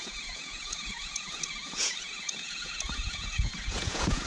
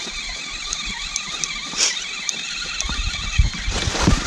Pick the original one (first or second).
second